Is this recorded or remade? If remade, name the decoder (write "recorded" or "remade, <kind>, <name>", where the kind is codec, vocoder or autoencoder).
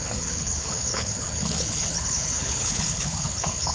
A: remade, codec, HILCodec